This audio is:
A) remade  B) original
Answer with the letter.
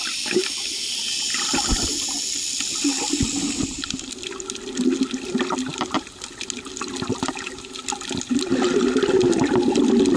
B